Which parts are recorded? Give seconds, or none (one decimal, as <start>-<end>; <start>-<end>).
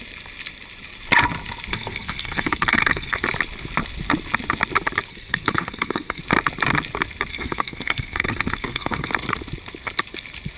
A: 0.0-1.7; 3.2-5.1; 6.2-7.3; 9.1-10.6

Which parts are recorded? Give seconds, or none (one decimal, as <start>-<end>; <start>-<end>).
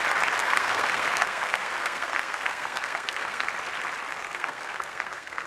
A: 0.0-0.4; 3.5-4.1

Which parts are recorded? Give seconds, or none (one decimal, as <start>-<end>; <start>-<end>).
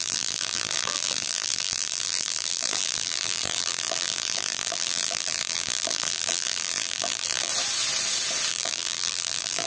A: 7.5-8.5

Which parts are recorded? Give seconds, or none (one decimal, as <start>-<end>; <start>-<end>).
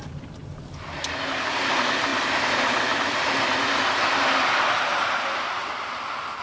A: 0.0-6.4